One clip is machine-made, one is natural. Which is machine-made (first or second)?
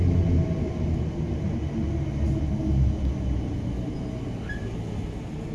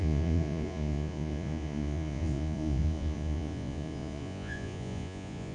second